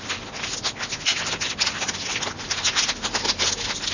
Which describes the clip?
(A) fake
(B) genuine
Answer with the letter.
B